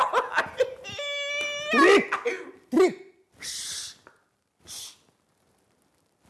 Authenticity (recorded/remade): recorded